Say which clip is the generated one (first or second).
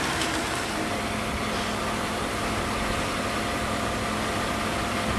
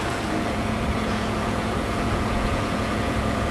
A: second